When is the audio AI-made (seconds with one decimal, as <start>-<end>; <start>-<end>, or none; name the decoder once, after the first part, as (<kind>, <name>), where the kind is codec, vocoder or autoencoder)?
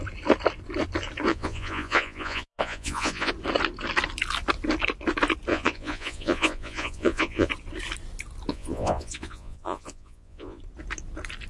1.3-3.3 (vocoder, Vocos); 5.5-7.5; 8.5-10.6